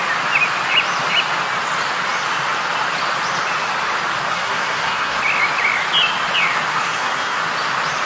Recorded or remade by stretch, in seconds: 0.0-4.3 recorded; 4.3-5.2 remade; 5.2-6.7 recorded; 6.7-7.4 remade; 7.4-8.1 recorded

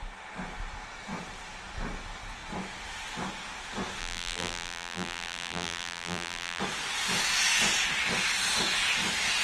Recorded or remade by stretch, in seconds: 0.0-4.0 recorded; 4.0-6.6 remade; 6.6-9.4 recorded

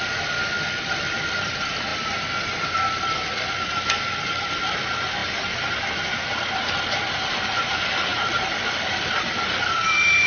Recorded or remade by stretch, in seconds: 0.0-1.9 remade; 1.9-3.0 recorded; 3.0-5.2 remade; 5.2-5.7 recorded; 5.7-10.3 remade

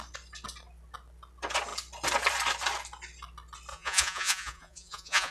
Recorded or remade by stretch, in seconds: 0.0-3.7 recorded; 3.7-5.3 remade